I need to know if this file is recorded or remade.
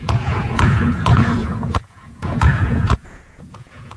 remade